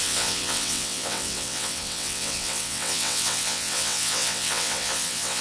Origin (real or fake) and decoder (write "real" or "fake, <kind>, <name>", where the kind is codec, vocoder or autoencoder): fake, vocoder, WaveNeXt